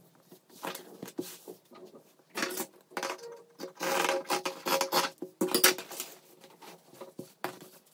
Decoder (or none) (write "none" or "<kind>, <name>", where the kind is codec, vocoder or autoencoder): none